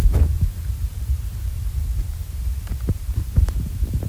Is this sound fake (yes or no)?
yes